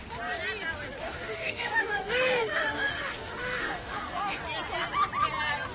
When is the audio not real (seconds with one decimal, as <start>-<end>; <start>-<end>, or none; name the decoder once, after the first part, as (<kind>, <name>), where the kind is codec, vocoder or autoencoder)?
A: 1.0-4.4 (autoencoder, DAC-VAE)